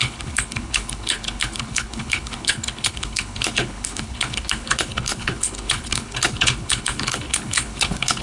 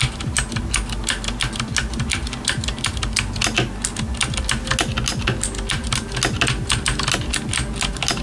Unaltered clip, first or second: second